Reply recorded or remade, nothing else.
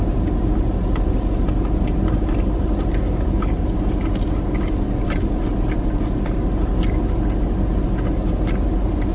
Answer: recorded